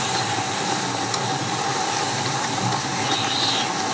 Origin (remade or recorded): recorded